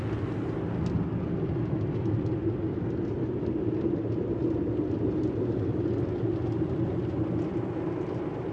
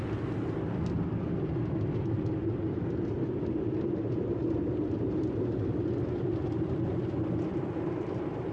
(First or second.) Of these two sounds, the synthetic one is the second